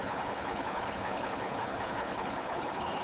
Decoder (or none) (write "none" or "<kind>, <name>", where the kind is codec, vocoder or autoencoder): codec, HILCodec